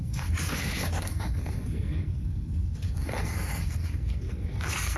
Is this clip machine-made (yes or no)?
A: yes